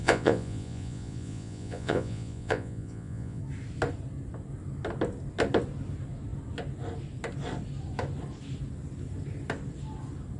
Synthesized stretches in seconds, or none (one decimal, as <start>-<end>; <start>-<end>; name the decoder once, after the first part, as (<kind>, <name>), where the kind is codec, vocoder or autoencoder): 0.0-3.4 (vocoder, Vocos)